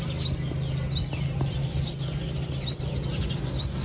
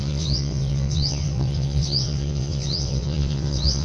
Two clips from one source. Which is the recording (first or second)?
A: first